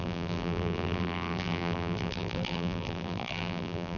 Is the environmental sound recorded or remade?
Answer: remade